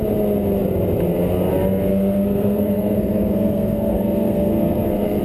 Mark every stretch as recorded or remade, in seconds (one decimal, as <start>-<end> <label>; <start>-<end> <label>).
0.0-1.9 recorded; 1.9-5.2 remade